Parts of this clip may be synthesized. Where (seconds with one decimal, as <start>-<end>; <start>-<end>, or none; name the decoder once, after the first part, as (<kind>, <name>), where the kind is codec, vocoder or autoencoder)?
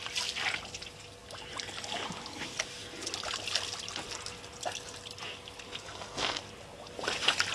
5.8-6.4 (codec, SNAC)